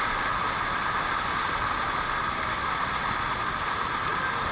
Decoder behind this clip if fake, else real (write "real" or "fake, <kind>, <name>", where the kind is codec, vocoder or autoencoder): real